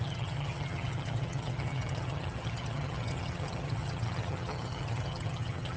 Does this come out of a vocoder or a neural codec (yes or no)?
yes